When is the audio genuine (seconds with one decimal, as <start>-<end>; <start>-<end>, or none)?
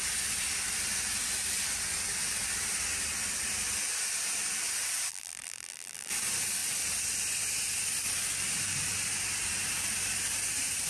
0.0-5.1; 6.1-10.9